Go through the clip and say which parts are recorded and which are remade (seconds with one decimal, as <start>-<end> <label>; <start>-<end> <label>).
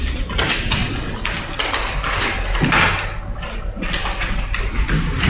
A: 0.0-5.3 recorded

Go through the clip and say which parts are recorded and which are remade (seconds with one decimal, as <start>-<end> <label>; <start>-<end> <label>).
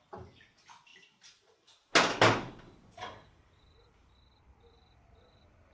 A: 0.0-5.7 recorded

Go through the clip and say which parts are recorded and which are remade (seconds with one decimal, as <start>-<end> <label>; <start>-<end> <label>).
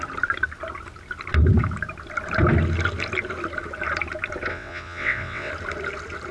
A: 0.0-4.5 recorded; 4.5-5.5 remade; 5.5-6.3 recorded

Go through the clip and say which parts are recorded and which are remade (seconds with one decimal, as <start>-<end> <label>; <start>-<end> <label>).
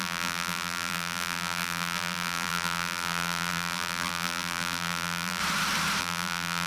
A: 0.0-5.4 remade; 5.4-6.0 recorded; 6.0-6.7 remade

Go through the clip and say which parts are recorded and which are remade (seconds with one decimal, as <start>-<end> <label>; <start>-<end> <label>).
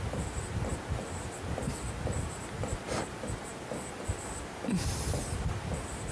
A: 0.0-6.1 recorded